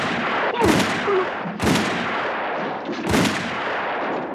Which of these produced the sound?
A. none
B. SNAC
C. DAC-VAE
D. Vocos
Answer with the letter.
A